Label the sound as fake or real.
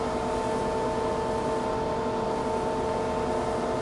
real